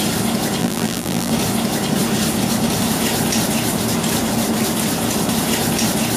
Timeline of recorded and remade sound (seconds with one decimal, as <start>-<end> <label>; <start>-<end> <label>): 0.0-0.6 recorded; 0.6-1.3 remade; 1.3-6.2 recorded